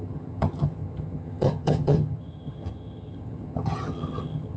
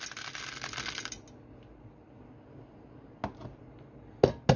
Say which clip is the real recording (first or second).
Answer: second